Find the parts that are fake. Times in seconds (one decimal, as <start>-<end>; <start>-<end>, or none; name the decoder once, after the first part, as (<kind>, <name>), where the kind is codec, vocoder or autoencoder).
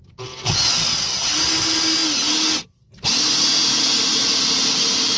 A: none